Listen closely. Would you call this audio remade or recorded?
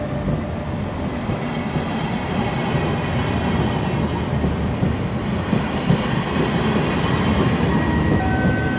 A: recorded